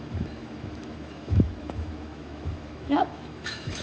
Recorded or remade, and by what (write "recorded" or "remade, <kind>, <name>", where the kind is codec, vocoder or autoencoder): remade, autoencoder, DAC-VAE